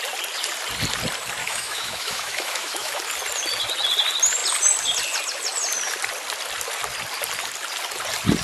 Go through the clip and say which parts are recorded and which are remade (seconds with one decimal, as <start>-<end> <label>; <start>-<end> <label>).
0.0-1.4 recorded; 1.4-3.0 remade; 3.0-8.4 recorded